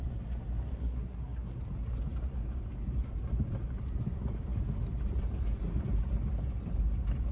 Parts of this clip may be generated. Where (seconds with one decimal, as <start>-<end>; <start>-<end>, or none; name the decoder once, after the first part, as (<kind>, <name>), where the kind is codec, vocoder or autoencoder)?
0.7-1.6 (codec, SNAC)